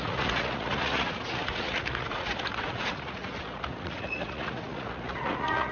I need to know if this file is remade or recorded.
remade